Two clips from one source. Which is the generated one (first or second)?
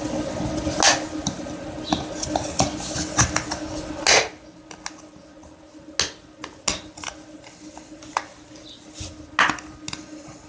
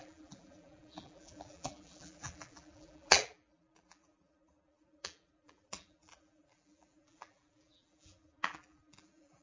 second